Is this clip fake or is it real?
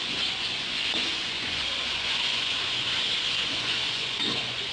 fake